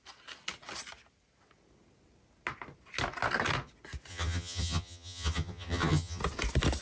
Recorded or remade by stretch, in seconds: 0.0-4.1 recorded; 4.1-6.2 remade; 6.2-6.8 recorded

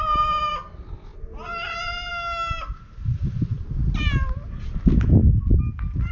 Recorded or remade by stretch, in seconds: 0.0-6.1 recorded

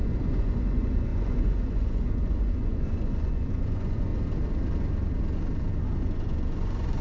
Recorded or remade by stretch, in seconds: 0.0-4.1 remade; 4.1-6.0 recorded; 6.0-7.0 remade

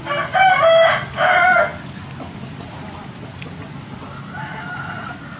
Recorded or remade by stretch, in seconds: 0.0-5.4 recorded

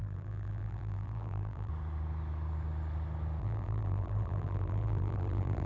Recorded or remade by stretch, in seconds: 0.0-1.7 remade; 1.7-3.4 recorded; 3.4-5.7 remade

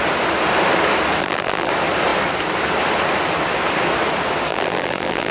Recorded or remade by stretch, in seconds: 0.0-1.2 recorded; 1.2-1.7 remade; 1.7-4.5 recorded; 4.5-5.3 remade

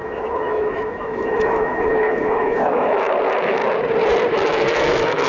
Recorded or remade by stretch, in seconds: 0.0-3.6 remade; 3.6-4.3 recorded; 4.3-5.3 remade